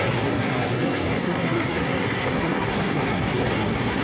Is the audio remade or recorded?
remade